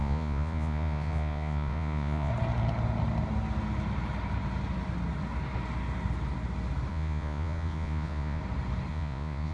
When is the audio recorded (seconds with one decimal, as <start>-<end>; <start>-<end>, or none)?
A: 2.3-6.9; 8.4-8.9